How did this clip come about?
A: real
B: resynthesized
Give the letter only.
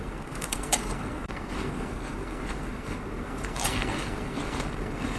B